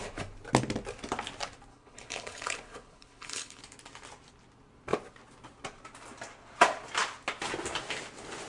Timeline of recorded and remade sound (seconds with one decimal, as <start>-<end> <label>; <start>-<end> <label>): 0.0-1.7 recorded; 1.7-3.6 remade; 3.6-8.5 recorded